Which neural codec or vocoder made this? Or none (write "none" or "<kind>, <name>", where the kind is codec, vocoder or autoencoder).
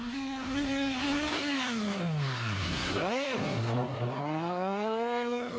codec, SNAC